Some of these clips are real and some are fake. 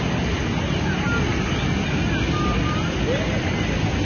real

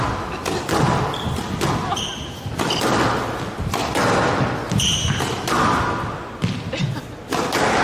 real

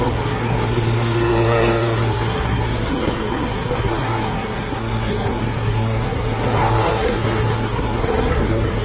fake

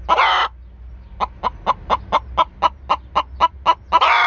real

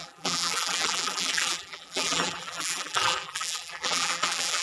fake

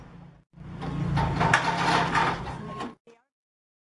real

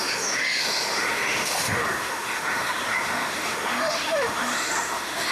fake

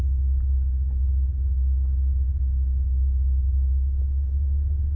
real